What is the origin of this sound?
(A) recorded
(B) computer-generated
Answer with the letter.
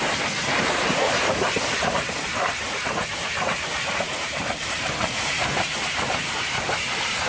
B